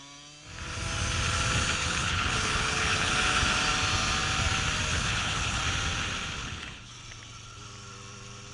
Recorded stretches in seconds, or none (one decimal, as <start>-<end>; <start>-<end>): 0.0-1.8; 3.1-4.9; 5.6-6.4; 6.9-8.5